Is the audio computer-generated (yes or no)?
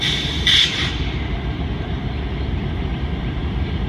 yes